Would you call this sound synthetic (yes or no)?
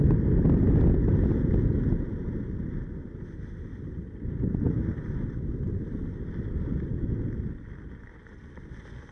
no